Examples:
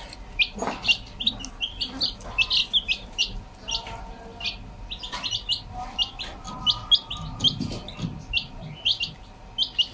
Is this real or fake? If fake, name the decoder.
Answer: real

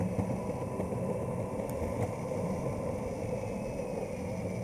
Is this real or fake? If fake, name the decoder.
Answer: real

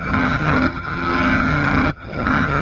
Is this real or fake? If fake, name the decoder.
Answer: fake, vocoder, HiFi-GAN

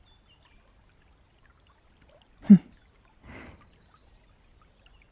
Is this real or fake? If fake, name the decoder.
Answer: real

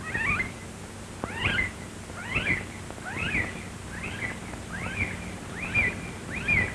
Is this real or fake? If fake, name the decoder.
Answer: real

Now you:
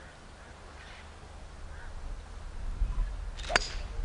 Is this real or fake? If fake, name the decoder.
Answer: real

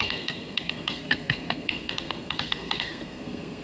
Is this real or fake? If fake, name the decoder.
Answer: fake, codec, SNAC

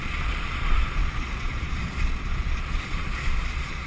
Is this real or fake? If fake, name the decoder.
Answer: fake, vocoder, Vocos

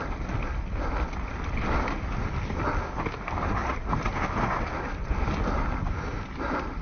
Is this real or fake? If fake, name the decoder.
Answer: real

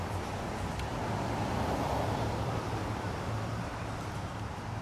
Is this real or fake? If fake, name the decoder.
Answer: fake, vocoder, BigVGAN v2